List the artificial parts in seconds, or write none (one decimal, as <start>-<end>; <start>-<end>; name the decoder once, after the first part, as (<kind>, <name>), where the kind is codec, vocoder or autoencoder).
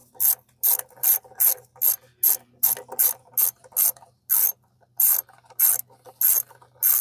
none